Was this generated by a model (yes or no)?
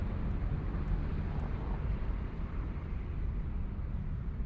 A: no